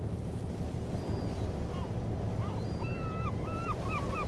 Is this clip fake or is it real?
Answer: fake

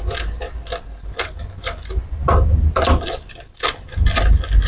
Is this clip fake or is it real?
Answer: real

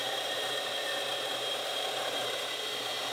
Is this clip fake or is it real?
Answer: fake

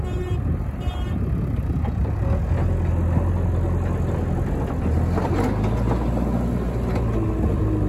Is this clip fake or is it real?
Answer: real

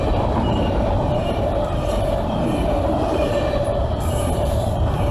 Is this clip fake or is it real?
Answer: fake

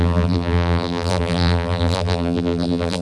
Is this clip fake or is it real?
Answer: fake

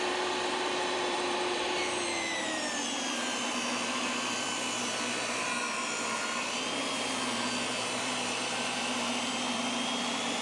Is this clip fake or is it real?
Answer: fake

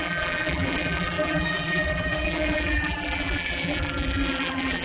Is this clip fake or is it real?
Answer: fake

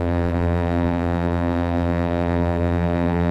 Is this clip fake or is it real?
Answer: fake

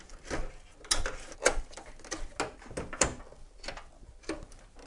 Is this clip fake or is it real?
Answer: real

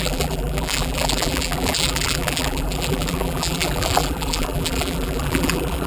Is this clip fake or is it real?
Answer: fake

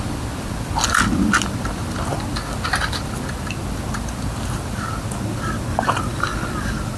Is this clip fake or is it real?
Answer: real